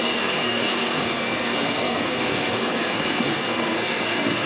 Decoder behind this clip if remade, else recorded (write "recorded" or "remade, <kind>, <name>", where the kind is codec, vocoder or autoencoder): remade, codec, SNAC